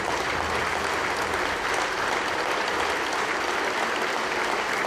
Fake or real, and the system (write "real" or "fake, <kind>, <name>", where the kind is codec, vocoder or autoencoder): real